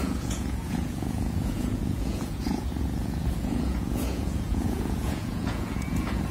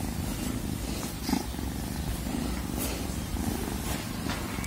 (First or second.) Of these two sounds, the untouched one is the second